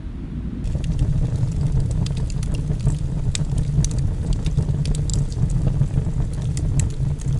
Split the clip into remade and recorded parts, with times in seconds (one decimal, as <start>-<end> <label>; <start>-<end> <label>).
0.0-7.4 recorded